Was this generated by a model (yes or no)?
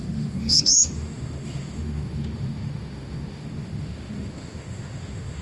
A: yes